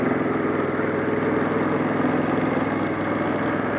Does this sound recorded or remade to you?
recorded